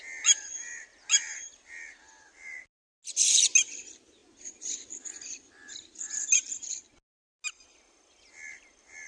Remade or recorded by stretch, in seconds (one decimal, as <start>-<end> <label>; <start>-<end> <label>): 0.0-9.1 recorded